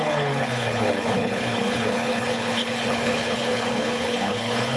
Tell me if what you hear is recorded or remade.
remade